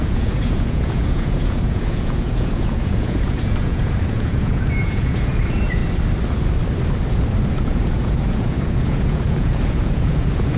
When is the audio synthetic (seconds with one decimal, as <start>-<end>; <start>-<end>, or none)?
0.0-5.8; 7.5-10.6